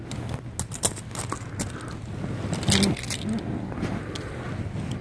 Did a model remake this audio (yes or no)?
no